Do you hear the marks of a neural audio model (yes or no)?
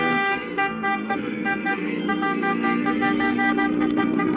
yes